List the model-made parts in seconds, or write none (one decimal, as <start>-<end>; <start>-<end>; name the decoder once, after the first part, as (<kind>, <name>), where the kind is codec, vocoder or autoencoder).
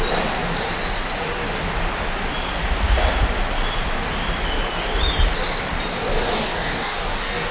5.9-7.5 (codec, DAC)